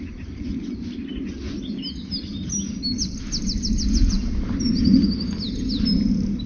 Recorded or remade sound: recorded